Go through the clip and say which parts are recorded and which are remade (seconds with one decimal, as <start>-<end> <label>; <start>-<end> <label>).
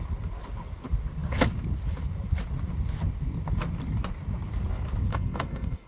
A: 0.0-5.1 recorded; 5.1-5.9 remade